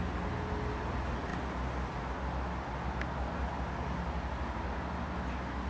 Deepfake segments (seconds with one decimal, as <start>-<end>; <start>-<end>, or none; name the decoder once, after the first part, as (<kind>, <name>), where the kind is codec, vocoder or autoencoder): none